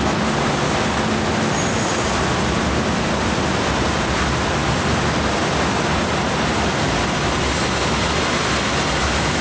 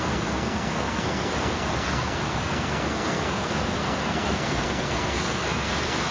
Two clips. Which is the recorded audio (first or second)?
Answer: first